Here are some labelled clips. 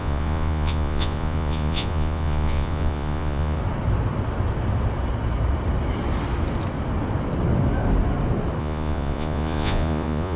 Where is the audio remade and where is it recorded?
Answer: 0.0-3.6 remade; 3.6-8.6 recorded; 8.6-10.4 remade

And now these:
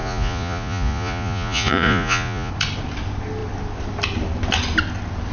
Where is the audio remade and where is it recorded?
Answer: 0.0-2.5 remade; 2.5-5.3 recorded

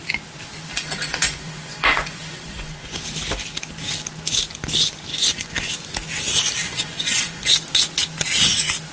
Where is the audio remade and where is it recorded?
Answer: 0.0-0.7 recorded; 0.7-3.0 remade; 3.0-5.1 recorded; 5.1-5.7 remade; 5.7-6.6 recorded; 6.6-7.5 remade; 7.5-8.9 recorded

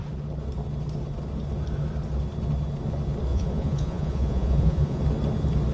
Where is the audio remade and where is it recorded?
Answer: 0.0-3.3 recorded; 3.3-5.0 remade; 5.0-5.7 recorded

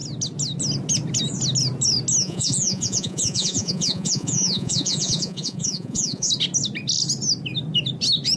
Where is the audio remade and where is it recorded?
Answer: 0.0-2.2 recorded; 2.2-6.3 remade; 6.3-8.4 recorded

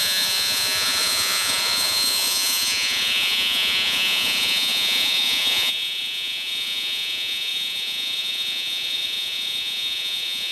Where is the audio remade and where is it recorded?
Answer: 0.0-10.5 remade

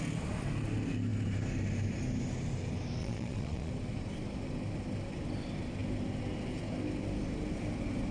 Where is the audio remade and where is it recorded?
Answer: 0.0-3.0 recorded; 3.0-3.7 remade; 3.7-8.1 recorded

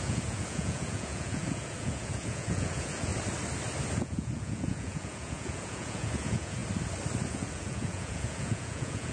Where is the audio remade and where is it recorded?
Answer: 0.0-3.1 remade; 3.1-4.0 recorded; 4.0-6.6 remade; 6.6-7.3 recorded; 7.3-9.1 remade